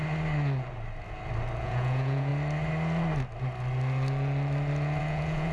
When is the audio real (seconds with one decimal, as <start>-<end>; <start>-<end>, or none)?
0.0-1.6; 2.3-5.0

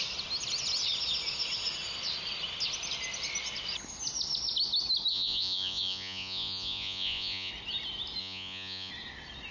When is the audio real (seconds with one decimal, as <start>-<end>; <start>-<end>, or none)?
0.0-5.1; 7.5-8.2; 8.9-9.5

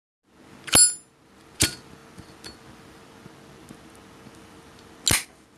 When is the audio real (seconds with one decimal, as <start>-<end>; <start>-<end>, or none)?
0.0-5.6